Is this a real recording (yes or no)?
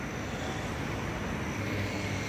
yes